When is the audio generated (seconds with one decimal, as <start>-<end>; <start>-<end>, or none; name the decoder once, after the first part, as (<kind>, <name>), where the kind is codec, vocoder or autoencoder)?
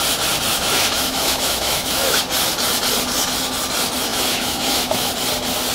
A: 0.5-2.2 (autoencoder, DAC-VAE); 4.1-5.1